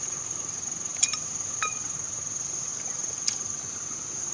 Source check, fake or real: fake